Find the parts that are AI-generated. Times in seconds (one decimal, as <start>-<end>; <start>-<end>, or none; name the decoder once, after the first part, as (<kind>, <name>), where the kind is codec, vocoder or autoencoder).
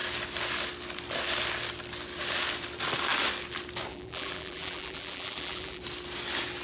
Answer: 3.9-5.8 (vocoder, BigVGAN v2)